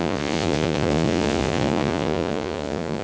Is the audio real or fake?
fake